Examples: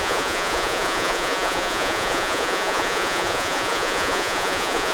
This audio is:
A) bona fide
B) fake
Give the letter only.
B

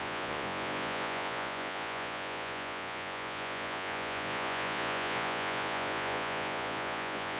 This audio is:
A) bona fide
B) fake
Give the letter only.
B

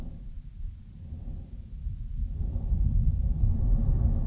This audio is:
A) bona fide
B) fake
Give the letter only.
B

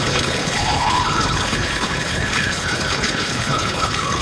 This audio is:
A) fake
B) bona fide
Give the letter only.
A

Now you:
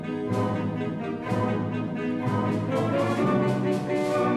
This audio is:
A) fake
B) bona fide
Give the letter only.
B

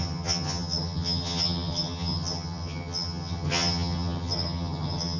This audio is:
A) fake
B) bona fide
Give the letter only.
A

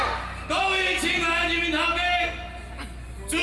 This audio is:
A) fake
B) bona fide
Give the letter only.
B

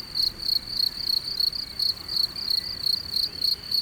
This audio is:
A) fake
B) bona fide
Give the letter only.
B